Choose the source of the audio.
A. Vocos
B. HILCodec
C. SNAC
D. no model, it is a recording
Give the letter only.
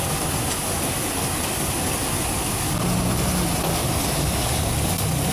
D